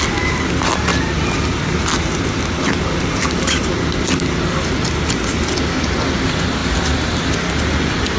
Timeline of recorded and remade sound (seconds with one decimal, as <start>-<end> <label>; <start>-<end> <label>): 0.0-8.2 recorded